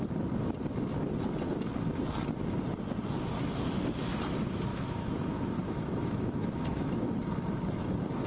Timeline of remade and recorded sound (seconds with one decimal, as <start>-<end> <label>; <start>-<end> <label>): 0.0-4.7 recorded; 4.7-6.9 remade; 6.9-8.3 recorded